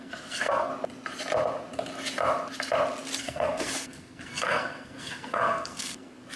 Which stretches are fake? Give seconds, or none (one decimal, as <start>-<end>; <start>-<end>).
0.0-0.7; 3.2-6.4